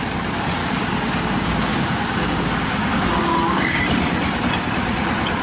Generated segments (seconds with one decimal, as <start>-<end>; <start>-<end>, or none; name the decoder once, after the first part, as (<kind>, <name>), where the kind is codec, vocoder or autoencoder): 0.6-3.8 (codec, DAC)